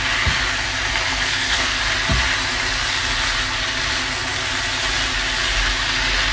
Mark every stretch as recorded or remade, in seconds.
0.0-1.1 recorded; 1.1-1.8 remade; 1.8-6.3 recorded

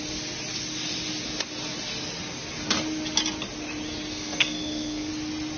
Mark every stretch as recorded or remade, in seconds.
0.0-4.1 recorded; 4.1-5.1 remade; 5.1-5.6 recorded

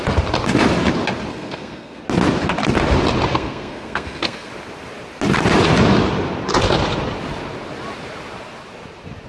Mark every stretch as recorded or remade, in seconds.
0.0-1.3 recorded; 1.3-2.0 remade; 2.0-3.3 recorded; 3.3-4.5 remade; 4.5-9.3 recorded

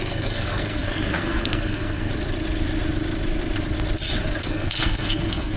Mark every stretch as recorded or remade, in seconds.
0.0-2.1 remade; 2.1-4.4 recorded; 4.4-5.6 remade